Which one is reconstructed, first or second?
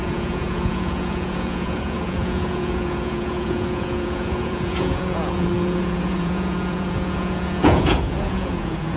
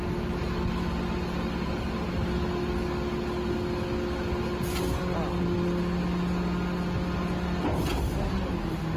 first